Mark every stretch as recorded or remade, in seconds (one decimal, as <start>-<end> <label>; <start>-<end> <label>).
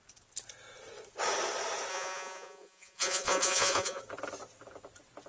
0.0-1.9 recorded; 1.9-4.0 remade; 4.0-5.3 recorded